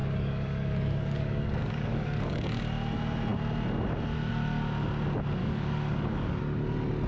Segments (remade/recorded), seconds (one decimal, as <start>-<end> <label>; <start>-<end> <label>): 0.0-2.6 remade; 2.6-5.4 recorded; 5.4-6.4 remade; 6.4-7.1 recorded

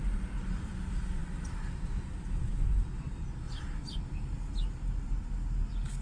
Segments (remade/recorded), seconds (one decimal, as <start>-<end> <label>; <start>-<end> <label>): 0.0-6.0 recorded

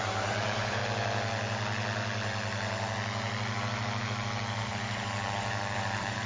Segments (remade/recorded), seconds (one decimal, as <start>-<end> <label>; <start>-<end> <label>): 0.0-0.8 remade; 0.8-4.6 recorded; 4.6-6.3 remade

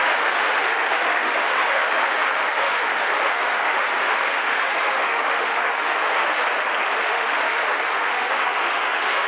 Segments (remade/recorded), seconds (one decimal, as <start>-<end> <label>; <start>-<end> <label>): 0.0-6.4 remade; 6.4-7.0 recorded; 7.0-9.3 remade